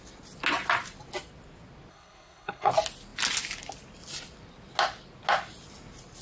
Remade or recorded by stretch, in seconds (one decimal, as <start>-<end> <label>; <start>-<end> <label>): 0.0-1.9 recorded; 1.9-2.7 remade; 2.7-6.2 recorded